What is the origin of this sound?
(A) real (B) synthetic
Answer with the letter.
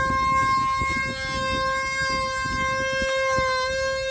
A